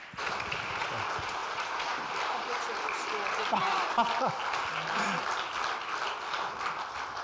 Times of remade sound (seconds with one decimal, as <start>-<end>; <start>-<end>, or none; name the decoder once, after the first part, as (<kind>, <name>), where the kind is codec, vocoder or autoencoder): 1.4-2.1 (vocoder, Vocos)